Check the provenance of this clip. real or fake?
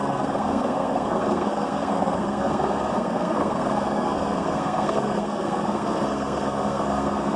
fake